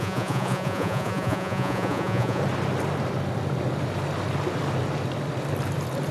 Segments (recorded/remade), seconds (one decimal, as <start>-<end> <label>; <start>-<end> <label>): 0.0-2.4 remade; 2.4-6.1 recorded

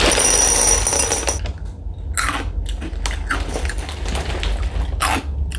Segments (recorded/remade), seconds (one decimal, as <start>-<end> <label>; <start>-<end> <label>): 0.0-5.6 recorded